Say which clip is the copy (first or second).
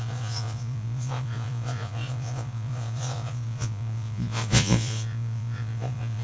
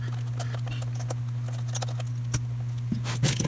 first